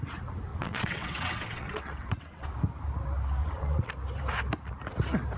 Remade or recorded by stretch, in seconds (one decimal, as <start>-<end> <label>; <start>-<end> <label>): 0.0-0.5 recorded; 0.5-2.5 remade; 2.5-3.4 recorded; 3.4-3.9 remade; 3.9-5.4 recorded